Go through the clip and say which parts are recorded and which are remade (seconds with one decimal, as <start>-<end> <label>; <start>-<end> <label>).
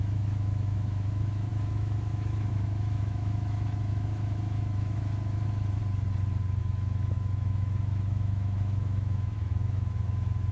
0.0-5.8 remade; 5.8-6.6 recorded; 6.6-10.5 remade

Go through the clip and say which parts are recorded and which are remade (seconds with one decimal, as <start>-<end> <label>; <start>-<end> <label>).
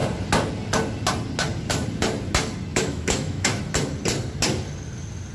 0.0-2.7 recorded; 2.7-3.6 remade; 3.6-5.3 recorded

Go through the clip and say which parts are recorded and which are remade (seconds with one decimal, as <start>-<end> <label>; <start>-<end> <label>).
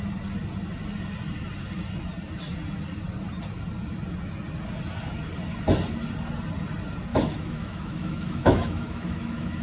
0.0-7.1 recorded; 7.1-9.6 remade